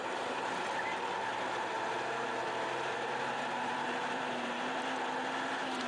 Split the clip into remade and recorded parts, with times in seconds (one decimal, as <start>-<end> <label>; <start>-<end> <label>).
0.0-1.3 recorded; 1.3-4.8 remade; 4.8-5.9 recorded